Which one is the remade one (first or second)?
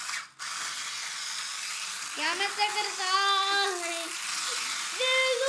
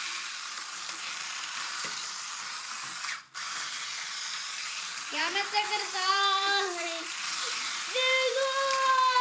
second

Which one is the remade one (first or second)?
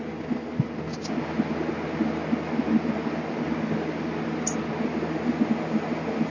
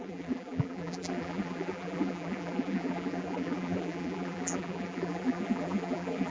second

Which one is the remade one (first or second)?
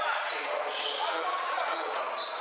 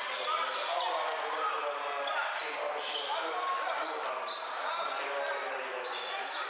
first